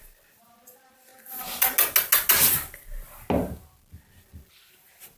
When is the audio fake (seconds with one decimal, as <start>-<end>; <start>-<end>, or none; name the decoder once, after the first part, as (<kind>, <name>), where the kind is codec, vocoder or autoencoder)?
0.0-1.1 (vocoder, BigVGAN v2); 4.2-5.2